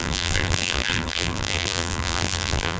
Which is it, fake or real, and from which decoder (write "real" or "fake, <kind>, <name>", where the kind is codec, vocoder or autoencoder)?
fake, vocoder, BigVGAN v2